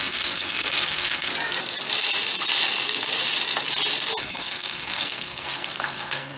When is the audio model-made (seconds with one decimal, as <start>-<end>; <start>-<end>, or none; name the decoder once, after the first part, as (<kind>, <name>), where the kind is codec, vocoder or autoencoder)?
0.0-1.3 (codec, SNAC); 4.2-6.4